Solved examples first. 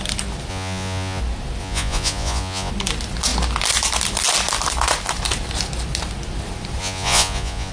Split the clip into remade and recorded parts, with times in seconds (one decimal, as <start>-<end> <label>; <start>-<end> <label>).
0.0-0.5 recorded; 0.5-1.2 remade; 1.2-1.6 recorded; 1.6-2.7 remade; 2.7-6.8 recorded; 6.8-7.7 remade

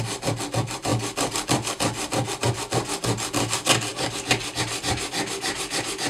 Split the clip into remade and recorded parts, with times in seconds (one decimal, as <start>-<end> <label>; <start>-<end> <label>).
0.0-6.1 recorded

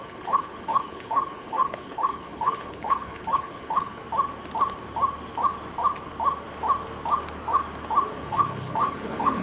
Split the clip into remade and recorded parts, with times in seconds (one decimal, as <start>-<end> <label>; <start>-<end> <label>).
0.0-4.0 remade; 4.0-8.1 recorded; 8.1-9.4 remade

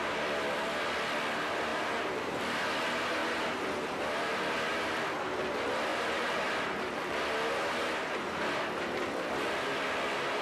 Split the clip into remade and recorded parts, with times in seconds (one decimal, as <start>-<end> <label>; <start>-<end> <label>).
0.0-1.7 recorded; 1.7-2.4 remade; 2.4-5.9 recorded; 5.9-7.2 remade; 7.2-10.4 recorded